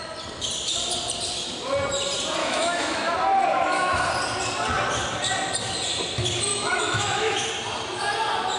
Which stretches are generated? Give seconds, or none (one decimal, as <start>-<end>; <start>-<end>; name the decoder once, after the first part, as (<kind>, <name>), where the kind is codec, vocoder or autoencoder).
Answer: 2.4-3.1 (autoencoder, DAC-VAE); 3.5-4.0; 6.5-7.5